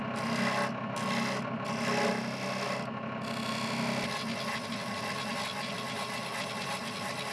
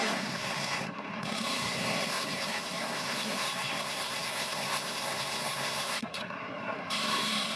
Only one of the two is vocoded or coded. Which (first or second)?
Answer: second